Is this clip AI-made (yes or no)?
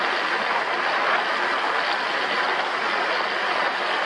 no